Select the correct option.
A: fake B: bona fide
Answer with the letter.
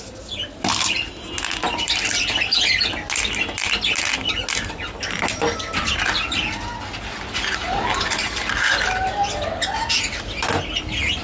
B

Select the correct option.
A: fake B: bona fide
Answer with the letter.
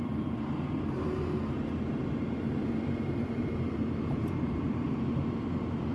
A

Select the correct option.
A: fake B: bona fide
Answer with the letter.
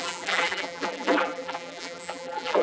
A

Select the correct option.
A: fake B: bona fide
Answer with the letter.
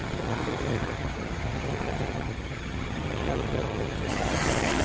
A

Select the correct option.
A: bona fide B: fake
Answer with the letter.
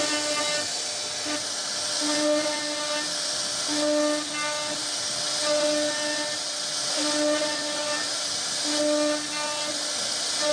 A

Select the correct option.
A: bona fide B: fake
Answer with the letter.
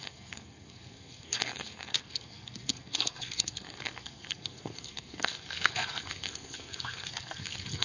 B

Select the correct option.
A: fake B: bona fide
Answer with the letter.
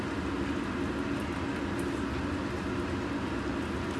B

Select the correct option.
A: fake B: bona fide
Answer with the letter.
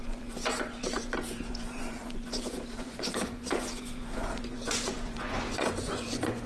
A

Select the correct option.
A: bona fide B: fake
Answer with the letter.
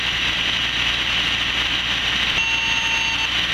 A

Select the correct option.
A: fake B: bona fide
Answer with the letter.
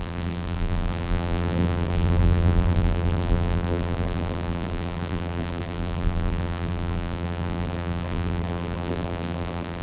A